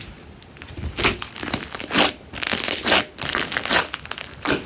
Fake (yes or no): no